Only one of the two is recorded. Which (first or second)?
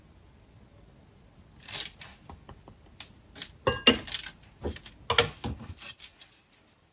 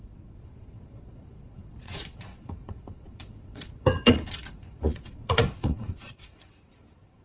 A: first